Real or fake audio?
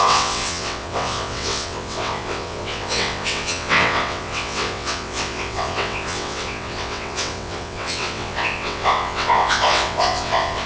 fake